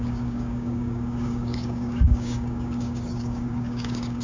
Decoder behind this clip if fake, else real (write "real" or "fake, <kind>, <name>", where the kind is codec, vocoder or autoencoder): fake, codec, DAC